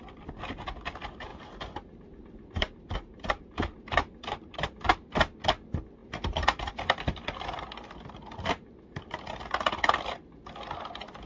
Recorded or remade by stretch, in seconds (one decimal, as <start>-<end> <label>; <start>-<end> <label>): 0.0-1.3 recorded; 1.3-4.8 remade; 4.8-6.0 recorded; 6.0-6.7 remade; 6.7-11.3 recorded